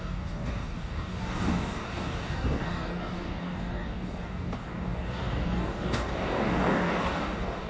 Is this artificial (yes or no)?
yes